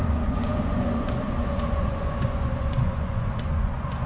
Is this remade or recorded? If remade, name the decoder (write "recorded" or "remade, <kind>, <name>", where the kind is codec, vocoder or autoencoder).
remade, vocoder, Vocos